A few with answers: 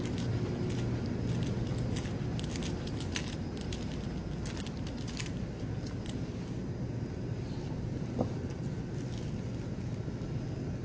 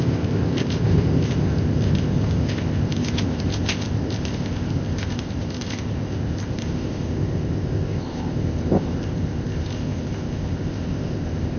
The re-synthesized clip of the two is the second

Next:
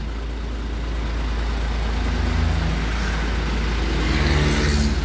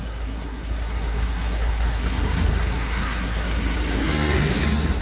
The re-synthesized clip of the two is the second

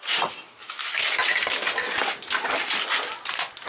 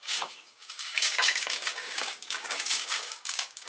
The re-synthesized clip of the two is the second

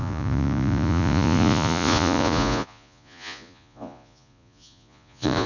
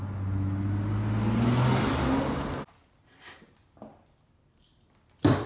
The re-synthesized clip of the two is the first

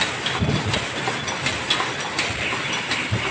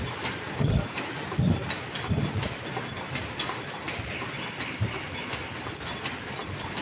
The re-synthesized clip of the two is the second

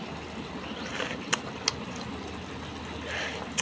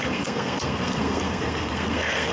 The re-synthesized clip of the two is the second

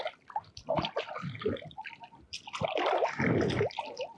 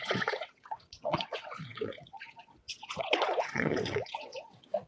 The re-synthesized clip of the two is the second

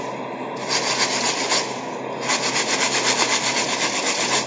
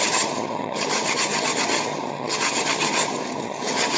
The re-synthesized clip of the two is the second